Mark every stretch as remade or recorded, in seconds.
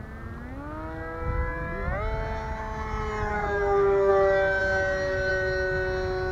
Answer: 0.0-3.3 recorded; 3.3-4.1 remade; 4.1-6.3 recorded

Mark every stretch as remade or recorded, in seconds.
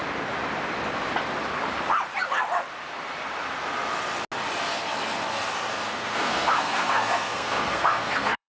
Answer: 0.0-5.7 recorded; 5.7-8.5 remade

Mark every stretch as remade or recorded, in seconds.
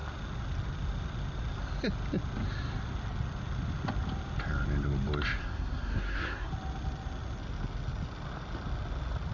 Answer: 0.0-5.4 recorded; 5.4-6.5 remade; 6.5-9.3 recorded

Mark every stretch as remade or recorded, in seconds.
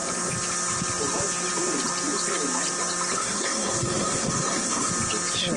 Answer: 0.0-3.2 recorded; 3.2-4.9 remade; 4.9-5.6 recorded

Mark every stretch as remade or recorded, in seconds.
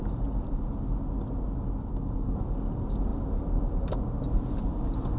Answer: 0.0-1.9 recorded; 1.9-2.4 remade; 2.4-5.2 recorded